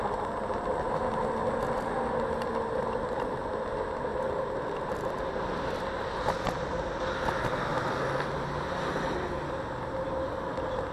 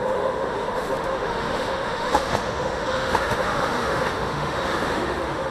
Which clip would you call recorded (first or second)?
first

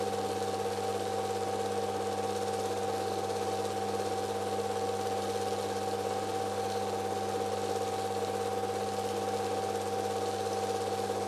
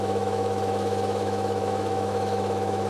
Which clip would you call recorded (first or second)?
first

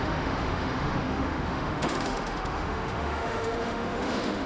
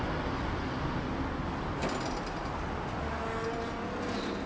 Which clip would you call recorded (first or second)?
second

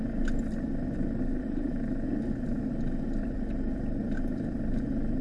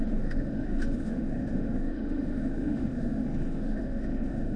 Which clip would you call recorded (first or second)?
first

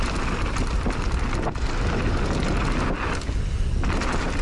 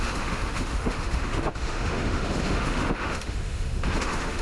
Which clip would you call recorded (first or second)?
first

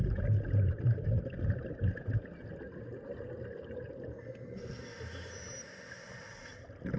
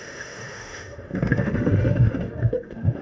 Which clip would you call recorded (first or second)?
first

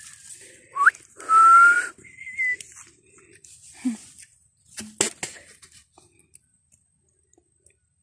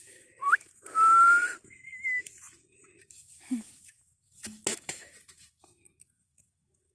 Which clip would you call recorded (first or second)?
first